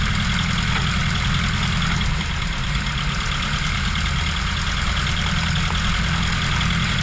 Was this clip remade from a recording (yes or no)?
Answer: no